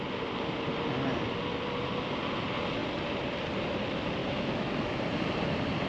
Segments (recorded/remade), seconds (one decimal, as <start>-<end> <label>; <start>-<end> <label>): 0.0-4.2 recorded; 4.2-5.0 remade; 5.0-5.9 recorded